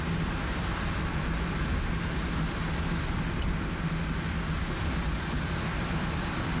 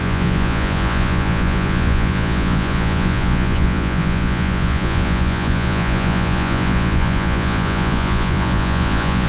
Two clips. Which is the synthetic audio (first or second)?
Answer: second